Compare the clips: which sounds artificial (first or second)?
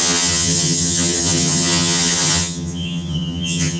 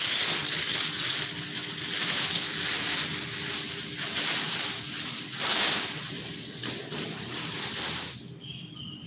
first